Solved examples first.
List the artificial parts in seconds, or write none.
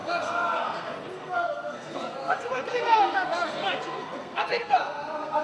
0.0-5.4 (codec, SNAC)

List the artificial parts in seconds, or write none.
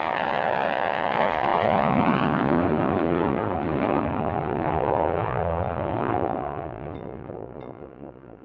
0.0-8.4 (vocoder, Vocos)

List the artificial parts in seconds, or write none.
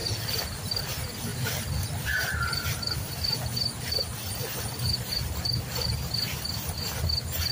none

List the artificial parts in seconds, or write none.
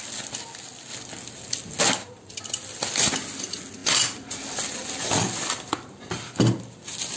none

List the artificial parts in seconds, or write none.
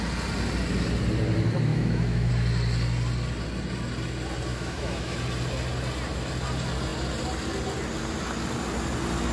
1.7-2.3 (autoencoder, DAC-VAE); 4.5-5.2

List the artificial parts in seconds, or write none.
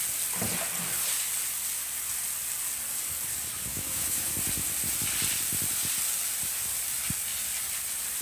3.7-4.3 (autoencoder, DAC-VAE)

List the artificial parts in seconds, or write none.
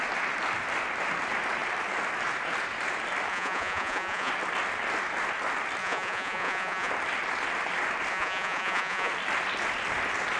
3.3-4.3 (vocoder, Vocos); 5.8-6.9; 8.1-9.1